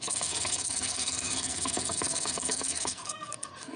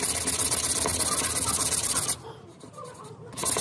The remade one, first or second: first